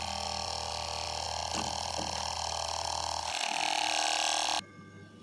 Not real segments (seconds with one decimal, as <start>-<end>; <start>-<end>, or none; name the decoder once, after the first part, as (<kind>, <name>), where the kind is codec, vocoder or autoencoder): none